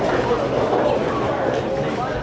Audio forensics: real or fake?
real